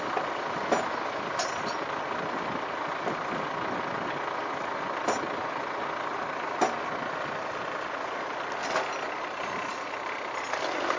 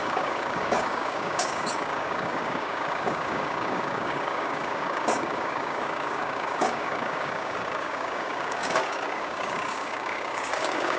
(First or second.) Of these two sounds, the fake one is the second